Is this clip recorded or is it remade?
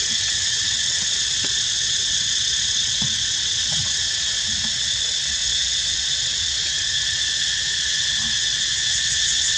remade